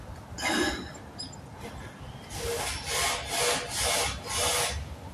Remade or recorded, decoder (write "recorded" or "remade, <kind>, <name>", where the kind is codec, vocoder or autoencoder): recorded